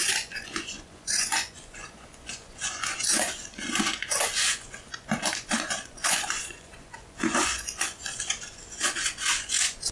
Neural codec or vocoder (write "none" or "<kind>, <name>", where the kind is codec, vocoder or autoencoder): vocoder, Vocos